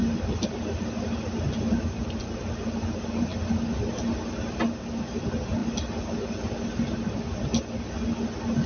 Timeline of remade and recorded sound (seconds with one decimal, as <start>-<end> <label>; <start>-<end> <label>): 0.0-8.7 recorded